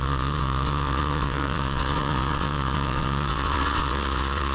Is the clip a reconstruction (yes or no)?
yes